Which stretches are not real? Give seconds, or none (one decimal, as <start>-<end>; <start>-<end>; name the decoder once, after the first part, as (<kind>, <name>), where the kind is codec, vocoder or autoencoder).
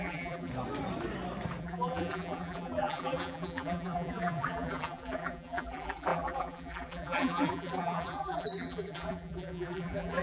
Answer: 0.0-0.5 (vocoder, BigVGAN v2); 1.6-10.2